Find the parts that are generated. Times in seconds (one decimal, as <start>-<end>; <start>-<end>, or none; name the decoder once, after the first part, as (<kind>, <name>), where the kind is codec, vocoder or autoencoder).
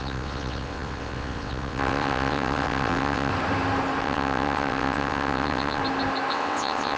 0.0-3.3 (vocoder, WaveNeXt); 4.0-5.8; 6.3-7.0